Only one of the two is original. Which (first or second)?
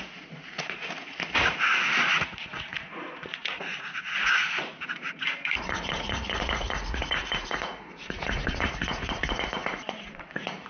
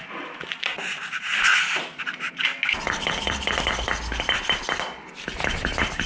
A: second